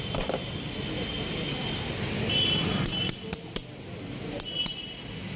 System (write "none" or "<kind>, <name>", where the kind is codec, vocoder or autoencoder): none